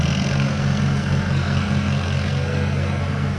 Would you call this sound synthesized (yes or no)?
yes